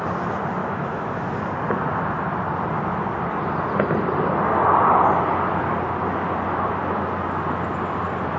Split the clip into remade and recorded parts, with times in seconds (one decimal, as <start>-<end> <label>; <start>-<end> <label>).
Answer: 0.0-0.6 recorded; 0.6-1.1 remade; 1.1-8.4 recorded